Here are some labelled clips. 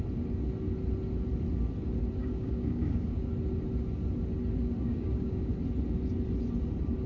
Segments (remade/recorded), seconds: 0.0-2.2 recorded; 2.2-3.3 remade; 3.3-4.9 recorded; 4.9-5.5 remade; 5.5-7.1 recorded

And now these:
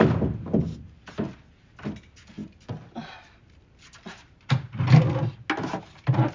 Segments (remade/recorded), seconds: 0.0-6.3 recorded